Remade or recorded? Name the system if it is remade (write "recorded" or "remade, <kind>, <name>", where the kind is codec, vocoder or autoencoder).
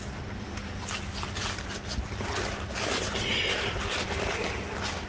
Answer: recorded